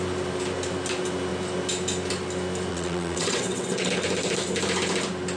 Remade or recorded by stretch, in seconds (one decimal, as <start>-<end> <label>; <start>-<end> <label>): 0.0-2.7 recorded; 2.7-3.9 remade; 3.9-5.4 recorded